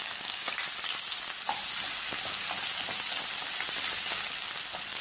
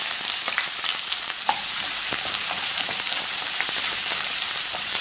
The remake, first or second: second